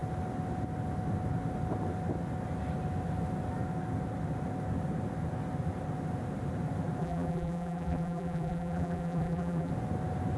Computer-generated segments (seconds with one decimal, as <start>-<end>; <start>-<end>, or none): 7.0-9.7